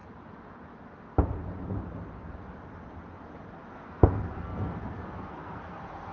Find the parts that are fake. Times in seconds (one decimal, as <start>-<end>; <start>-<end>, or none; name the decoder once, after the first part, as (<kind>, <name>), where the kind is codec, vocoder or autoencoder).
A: 3.7-6.1 (codec, SNAC)